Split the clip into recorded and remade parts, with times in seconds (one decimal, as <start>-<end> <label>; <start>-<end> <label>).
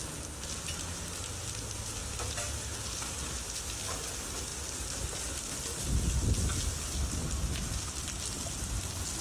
0.0-9.2 recorded